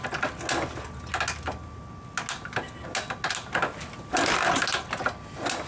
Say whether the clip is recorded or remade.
recorded